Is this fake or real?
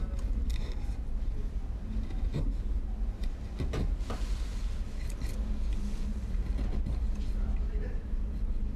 real